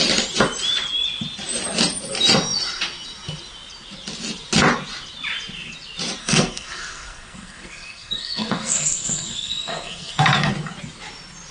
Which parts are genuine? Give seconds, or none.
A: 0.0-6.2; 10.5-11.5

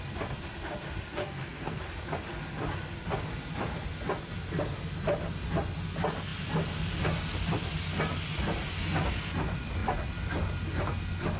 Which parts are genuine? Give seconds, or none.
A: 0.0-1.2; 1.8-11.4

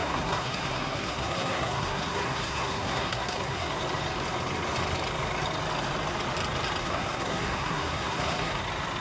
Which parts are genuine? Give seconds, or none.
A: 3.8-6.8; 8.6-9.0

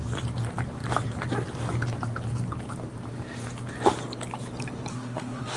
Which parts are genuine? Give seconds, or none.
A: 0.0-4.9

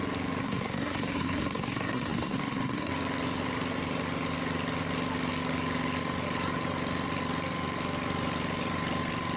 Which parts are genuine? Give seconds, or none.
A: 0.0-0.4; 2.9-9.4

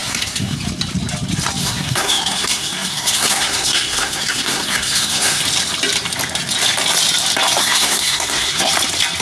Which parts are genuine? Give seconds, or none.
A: 0.6-1.6; 5.4-7.6; 8.7-9.2